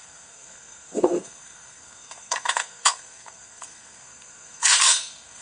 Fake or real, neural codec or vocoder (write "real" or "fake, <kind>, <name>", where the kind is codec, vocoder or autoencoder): fake, codec, SNAC